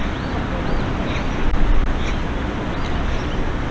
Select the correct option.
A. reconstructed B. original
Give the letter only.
B